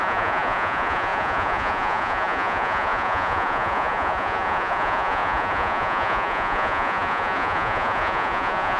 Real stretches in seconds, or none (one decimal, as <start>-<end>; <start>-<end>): none